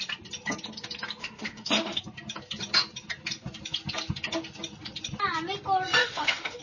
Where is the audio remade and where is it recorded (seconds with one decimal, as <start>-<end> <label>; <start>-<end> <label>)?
0.0-1.2 recorded; 1.2-2.0 remade; 2.0-6.0 recorded; 6.0-6.6 remade